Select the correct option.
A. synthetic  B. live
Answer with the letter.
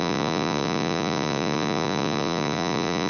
A